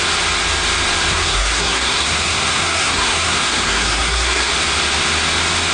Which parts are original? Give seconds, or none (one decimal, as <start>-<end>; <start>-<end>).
0.0-1.1; 4.5-5.7

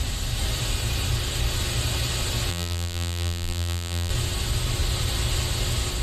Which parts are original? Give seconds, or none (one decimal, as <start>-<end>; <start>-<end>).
0.0-2.5; 4.1-6.0

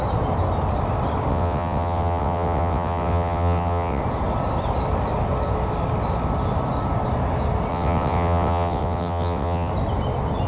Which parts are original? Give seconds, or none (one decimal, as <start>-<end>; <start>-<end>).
0.0-1.3; 4.0-7.7; 9.7-10.5

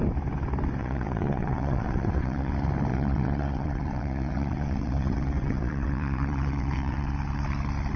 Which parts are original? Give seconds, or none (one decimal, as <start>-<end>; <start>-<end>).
0.0-0.8; 2.5-2.9; 7.1-8.0

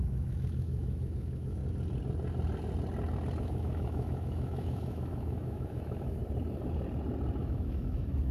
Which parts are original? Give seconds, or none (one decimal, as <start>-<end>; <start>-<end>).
1.6-3.4; 6.2-7.4

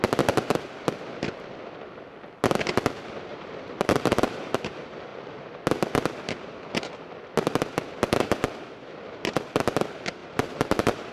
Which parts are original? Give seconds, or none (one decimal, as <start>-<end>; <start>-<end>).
0.0-3.3; 4.5-10.2

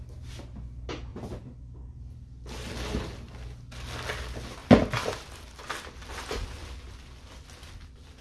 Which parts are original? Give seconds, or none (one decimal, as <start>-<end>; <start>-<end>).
0.0-1.1; 1.8-8.2